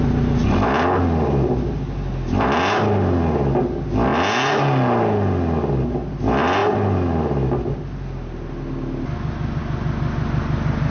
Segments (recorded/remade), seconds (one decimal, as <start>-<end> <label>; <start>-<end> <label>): 0.0-10.9 recorded